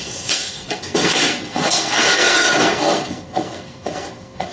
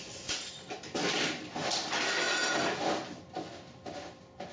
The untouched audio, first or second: second